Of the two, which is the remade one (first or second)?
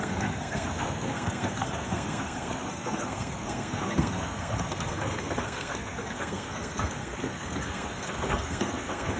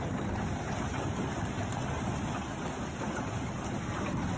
first